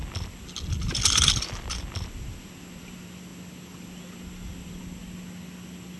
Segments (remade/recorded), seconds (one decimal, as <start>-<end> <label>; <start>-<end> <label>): 0.0-6.0 recorded